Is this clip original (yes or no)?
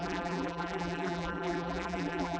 no